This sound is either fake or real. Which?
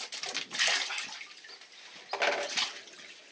real